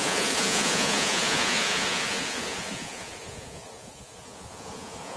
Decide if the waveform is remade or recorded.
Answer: remade